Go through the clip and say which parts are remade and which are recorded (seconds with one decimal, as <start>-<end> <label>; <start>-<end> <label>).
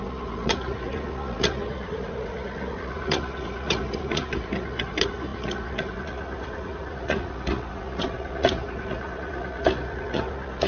0.0-10.7 remade